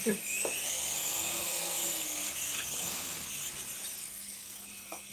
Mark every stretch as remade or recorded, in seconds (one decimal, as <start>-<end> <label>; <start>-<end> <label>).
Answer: 0.0-0.6 recorded; 0.6-3.3 remade; 3.3-4.0 recorded; 4.0-5.1 remade